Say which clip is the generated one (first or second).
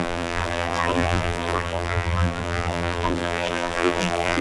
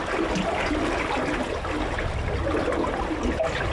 first